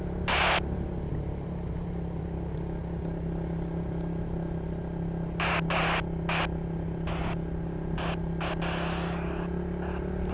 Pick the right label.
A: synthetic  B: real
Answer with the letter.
B